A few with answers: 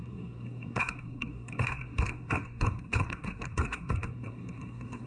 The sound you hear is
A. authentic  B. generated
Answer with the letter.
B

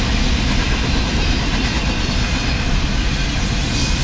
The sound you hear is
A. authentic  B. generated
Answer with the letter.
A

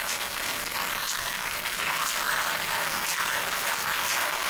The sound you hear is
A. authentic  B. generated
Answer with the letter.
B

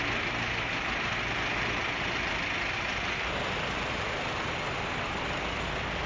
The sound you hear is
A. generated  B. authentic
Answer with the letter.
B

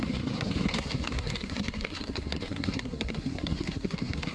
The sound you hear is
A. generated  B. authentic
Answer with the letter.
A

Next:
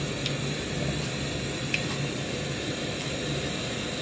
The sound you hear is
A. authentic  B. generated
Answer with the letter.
A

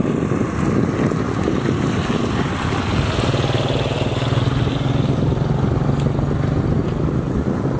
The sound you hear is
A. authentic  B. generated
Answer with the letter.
A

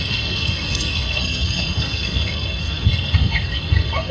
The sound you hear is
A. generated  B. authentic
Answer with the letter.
A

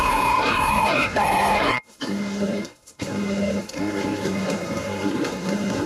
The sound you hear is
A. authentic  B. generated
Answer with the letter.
B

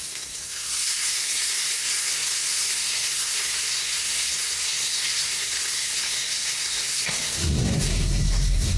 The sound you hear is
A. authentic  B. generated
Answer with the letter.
B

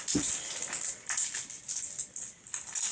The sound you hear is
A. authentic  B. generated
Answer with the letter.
A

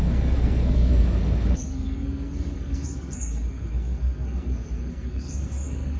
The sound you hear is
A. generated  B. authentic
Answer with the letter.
A